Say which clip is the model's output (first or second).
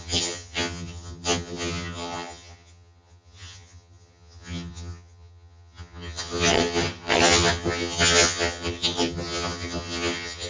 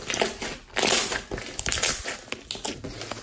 first